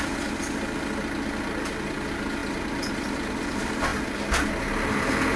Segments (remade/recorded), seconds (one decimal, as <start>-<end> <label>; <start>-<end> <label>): 0.0-5.4 recorded